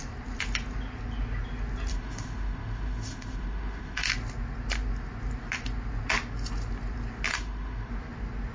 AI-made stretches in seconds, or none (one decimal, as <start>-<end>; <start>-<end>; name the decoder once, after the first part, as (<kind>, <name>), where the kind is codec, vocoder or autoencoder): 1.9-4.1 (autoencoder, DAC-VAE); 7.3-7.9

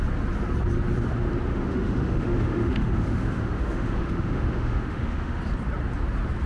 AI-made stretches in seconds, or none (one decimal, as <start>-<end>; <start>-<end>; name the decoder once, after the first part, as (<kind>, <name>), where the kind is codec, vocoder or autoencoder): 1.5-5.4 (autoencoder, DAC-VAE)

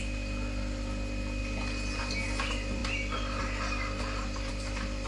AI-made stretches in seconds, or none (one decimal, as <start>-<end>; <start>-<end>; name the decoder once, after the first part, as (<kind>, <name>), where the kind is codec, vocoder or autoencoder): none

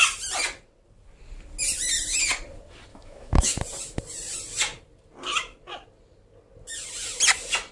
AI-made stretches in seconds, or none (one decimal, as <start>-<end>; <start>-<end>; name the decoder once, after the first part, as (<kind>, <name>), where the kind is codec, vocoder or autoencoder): 2.9-3.6 (autoencoder, DAC-VAE)

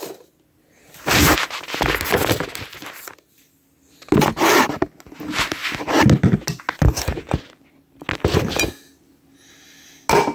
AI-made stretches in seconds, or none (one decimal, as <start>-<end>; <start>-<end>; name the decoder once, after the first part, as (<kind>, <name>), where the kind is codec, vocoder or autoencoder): none

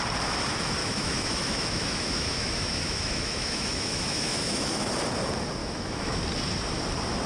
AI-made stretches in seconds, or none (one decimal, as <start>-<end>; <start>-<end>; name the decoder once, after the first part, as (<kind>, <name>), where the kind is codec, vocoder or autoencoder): 0.8-4.9 (autoencoder, DAC-VAE); 5.6-6.2